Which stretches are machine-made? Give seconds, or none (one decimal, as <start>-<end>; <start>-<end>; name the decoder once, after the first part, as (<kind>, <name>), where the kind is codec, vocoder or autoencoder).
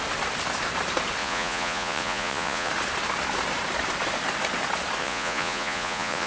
1.2-2.7 (vocoder, Vocos); 5.0-6.3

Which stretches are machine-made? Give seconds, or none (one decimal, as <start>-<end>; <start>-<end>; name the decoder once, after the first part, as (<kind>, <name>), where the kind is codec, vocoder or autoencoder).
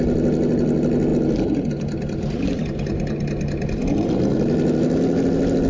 none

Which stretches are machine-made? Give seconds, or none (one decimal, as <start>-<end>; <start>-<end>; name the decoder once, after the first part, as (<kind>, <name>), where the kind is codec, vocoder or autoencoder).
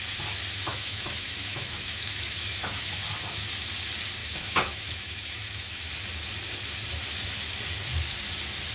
0.7-2.9 (autoencoder, DAC-VAE); 4.2-5.9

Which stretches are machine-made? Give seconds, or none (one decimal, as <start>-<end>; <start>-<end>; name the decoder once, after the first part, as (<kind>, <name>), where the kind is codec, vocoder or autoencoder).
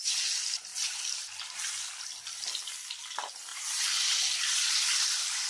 3.5-4.4 (vocoder, BigVGAN v2)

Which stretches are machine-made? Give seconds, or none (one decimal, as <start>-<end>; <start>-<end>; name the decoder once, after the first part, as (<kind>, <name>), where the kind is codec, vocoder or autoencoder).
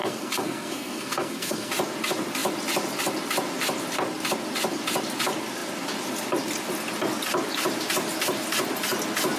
0.0-1.7 (codec, SNAC)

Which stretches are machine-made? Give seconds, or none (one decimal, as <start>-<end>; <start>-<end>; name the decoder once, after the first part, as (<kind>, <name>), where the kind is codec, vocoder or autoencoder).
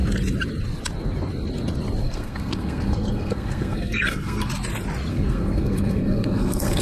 2.0-4.5 (codec, SNAC); 5.1-6.8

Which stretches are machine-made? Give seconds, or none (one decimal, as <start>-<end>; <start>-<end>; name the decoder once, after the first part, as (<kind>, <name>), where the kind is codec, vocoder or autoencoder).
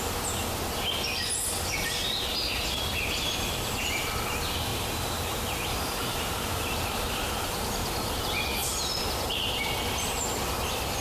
4.7-8.2 (vocoder, BigVGAN v2)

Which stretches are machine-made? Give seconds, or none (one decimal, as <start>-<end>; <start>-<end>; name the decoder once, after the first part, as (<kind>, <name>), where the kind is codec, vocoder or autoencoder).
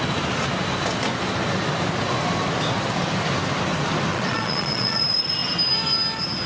4.1-5.0 (vocoder, Vocos)